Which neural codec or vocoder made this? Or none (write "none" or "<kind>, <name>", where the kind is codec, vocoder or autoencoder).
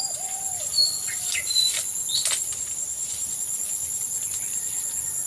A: none